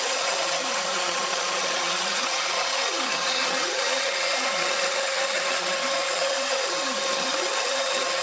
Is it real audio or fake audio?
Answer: fake